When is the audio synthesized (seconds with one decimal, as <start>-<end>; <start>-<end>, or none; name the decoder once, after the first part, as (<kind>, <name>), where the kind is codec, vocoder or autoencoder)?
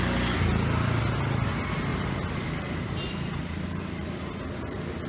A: 1.9-5.1 (vocoder, BigVGAN v2)